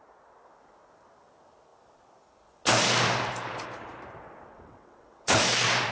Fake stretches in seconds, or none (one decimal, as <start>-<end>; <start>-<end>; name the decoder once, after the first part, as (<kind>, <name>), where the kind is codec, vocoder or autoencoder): 4.5-5.4 (vocoder, WaveNeXt)